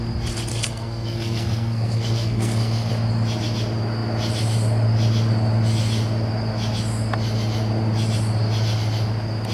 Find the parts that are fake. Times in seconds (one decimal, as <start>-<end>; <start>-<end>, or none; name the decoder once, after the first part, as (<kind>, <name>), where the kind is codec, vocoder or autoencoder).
0.5-2.9 (codec, SNAC)